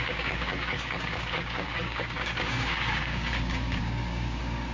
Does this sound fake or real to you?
fake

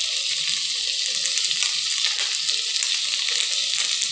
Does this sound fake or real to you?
real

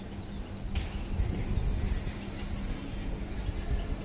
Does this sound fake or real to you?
real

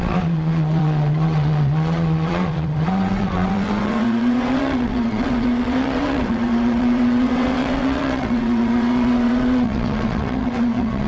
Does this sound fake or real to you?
fake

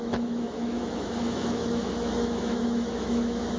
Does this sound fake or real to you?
fake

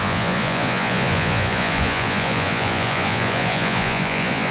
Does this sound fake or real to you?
fake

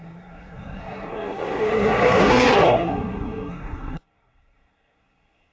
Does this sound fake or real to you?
fake